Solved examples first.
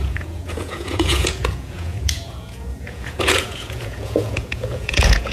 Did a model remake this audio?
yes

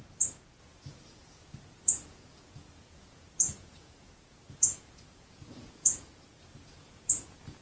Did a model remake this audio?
yes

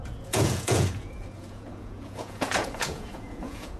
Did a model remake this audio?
yes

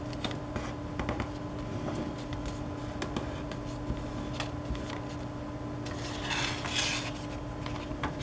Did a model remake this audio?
no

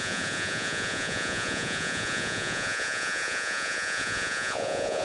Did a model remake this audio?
yes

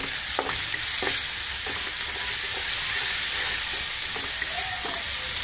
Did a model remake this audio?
no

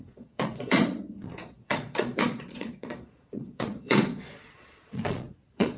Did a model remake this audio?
yes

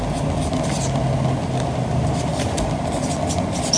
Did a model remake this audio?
no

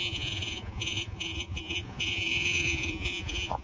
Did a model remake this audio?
yes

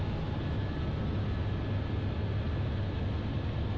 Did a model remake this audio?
no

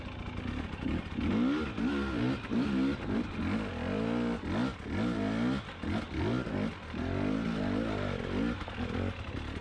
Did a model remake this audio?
no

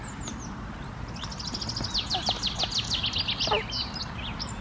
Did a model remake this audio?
no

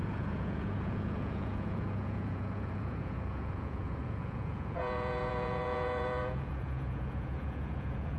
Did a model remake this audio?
yes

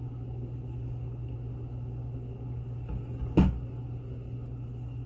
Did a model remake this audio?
no